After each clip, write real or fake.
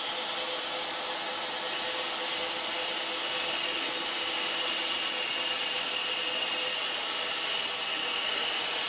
real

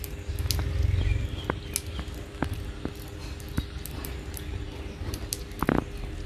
real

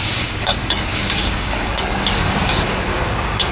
fake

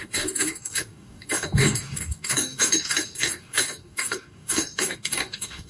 fake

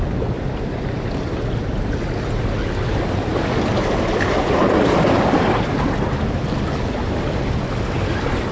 real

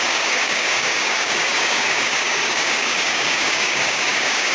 fake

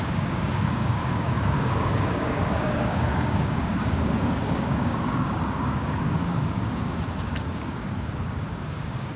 fake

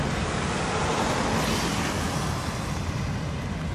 real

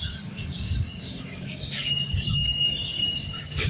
fake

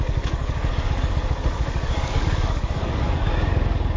fake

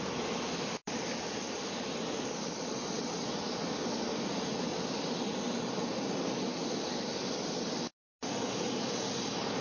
real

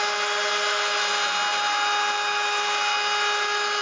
real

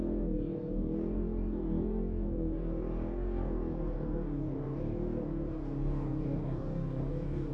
fake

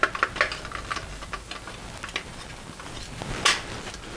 real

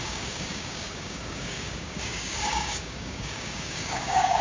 fake